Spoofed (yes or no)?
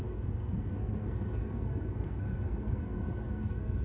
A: yes